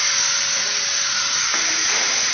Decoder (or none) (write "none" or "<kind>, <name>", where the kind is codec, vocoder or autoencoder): none